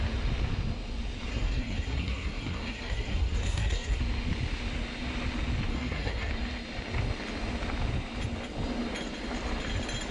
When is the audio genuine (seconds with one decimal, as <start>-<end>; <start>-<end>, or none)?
0.0-1.3; 4.0-5.7; 6.3-10.1